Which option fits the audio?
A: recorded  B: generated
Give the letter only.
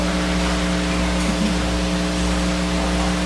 A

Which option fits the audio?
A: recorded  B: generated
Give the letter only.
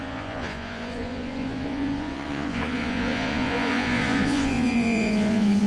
B